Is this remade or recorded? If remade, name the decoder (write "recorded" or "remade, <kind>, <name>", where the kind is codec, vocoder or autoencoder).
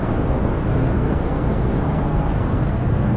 remade, codec, SNAC